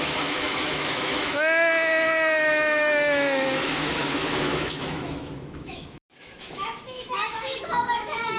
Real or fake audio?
fake